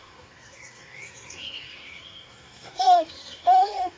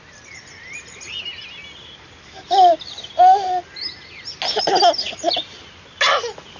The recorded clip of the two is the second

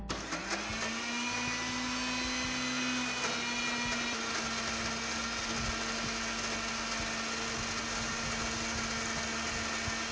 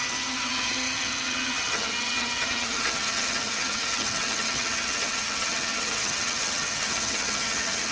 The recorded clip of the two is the first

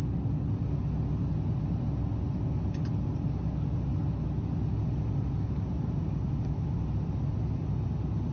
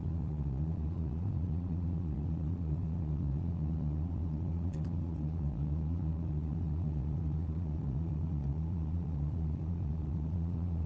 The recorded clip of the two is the first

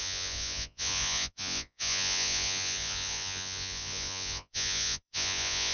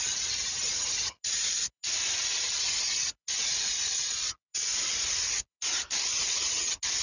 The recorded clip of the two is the second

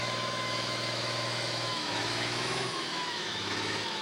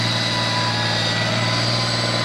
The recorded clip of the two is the second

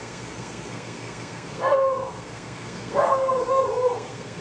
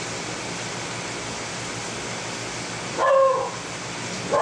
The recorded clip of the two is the second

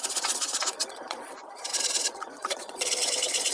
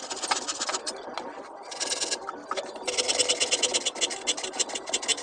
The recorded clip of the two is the second